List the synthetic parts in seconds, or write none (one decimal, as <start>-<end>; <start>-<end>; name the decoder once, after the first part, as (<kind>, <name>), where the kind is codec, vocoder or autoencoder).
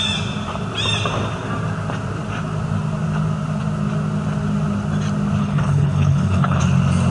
5.4-6.6 (codec, HILCodec)